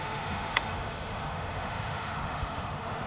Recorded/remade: remade